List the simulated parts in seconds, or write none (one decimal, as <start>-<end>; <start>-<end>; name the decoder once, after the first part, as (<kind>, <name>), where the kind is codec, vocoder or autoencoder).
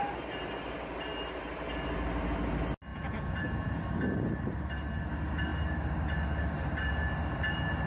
2.9-3.8 (vocoder, Vocos)